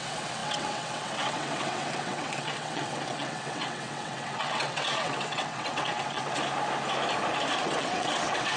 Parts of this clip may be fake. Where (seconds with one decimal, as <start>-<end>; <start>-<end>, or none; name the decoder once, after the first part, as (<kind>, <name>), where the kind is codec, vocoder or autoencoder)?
0.0-6.4 (vocoder, WaveNeXt); 7.6-8.6